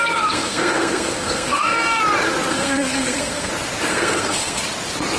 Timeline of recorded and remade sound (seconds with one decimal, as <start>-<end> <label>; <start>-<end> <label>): 0.0-2.0 remade; 2.0-2.5 recorded; 2.5-3.5 remade; 3.5-3.9 recorded; 3.9-4.6 remade; 4.6-5.2 recorded